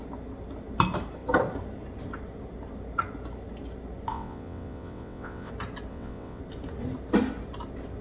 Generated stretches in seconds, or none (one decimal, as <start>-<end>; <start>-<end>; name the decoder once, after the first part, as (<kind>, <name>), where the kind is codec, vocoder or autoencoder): 4.1-5.5 (vocoder, WaveNeXt); 5.9-6.4

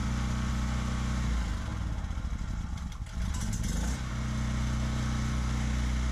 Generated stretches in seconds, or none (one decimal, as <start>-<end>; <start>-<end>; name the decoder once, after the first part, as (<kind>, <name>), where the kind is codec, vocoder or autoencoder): none

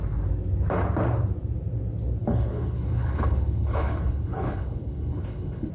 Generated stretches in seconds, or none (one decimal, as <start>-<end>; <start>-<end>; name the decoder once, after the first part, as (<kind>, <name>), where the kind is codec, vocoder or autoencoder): 2.2-5.7 (codec, HILCodec)

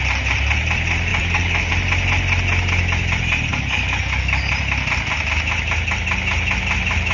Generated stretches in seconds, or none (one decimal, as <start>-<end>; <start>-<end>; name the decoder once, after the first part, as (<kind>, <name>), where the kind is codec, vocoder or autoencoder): 1.1-1.7 (codec, DAC); 3.5-4.5